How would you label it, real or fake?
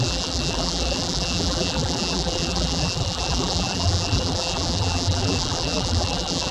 fake